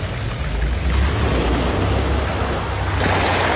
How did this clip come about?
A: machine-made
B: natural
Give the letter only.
B